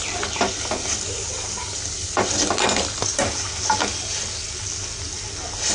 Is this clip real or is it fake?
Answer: real